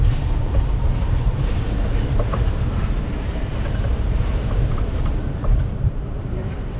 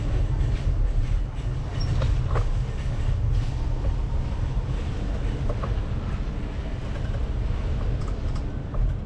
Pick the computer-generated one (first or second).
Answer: first